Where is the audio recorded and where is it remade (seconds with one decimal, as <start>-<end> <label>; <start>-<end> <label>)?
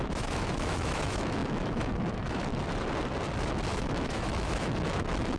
0.0-2.5 remade; 2.5-3.8 recorded; 3.8-5.4 remade